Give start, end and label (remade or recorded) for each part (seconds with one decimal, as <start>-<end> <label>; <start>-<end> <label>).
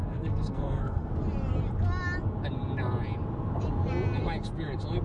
0.0-1.1 remade; 1.1-5.0 recorded